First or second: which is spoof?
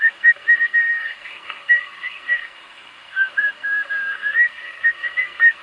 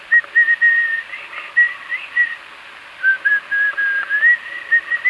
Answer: first